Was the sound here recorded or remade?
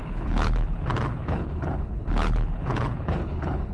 remade